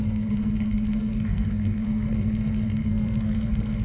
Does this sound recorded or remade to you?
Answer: remade